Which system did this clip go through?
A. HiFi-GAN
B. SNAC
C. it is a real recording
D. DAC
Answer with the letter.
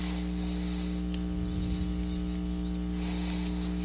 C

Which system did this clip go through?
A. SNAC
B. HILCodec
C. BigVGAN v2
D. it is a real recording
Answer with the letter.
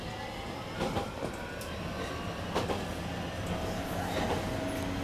D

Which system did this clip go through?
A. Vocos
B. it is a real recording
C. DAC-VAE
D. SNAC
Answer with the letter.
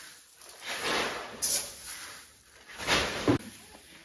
B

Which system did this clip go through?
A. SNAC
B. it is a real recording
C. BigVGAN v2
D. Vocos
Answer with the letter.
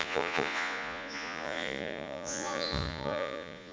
D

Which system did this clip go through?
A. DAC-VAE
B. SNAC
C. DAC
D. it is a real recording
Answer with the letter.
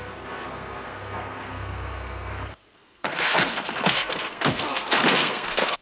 B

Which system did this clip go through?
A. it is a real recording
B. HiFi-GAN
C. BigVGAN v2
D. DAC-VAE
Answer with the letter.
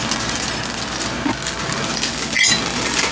A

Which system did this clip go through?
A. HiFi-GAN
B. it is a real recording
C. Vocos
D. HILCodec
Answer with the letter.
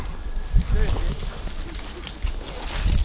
B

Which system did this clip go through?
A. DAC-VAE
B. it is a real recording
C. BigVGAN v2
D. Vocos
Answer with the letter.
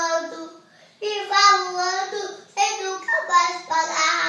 B